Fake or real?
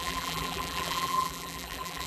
fake